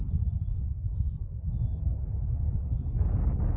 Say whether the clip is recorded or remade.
recorded